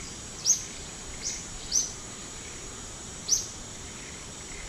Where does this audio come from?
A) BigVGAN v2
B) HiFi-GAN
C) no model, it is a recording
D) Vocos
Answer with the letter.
A